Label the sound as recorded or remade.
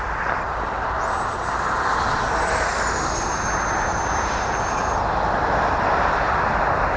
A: recorded